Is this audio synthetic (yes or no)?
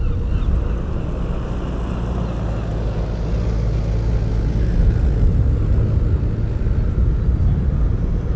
no